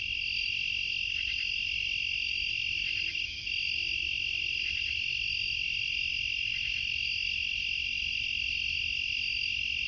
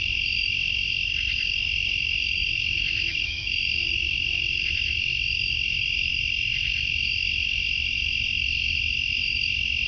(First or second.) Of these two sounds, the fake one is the second